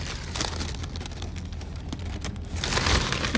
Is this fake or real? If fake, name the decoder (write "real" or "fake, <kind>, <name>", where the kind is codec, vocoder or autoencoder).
real